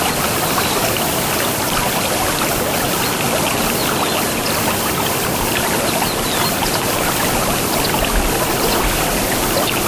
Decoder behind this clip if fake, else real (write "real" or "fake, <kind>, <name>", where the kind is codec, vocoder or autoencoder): real